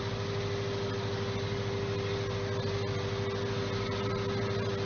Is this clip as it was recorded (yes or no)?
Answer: yes